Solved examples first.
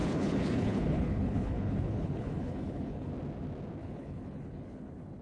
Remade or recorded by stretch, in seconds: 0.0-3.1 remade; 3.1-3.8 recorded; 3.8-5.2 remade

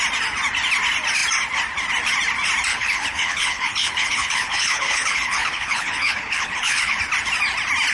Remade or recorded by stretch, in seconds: 0.0-2.7 recorded; 2.7-7.0 remade; 7.0-7.9 recorded